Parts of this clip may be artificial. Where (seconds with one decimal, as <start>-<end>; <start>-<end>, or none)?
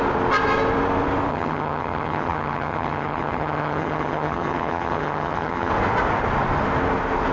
1.3-5.7